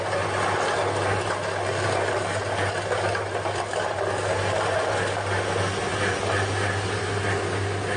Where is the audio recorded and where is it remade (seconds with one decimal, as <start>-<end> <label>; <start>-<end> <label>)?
0.0-8.0 recorded